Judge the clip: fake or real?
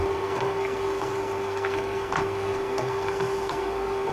fake